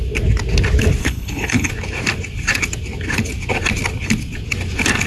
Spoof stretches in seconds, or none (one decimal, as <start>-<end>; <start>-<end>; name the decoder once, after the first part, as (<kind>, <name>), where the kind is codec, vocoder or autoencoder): 1.0-1.7 (codec, HILCodec)